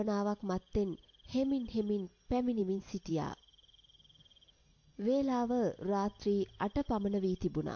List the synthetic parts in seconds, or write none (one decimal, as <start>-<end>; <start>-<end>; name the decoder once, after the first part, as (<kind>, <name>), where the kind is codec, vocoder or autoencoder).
2.6-3.1 (vocoder, BigVGAN v2)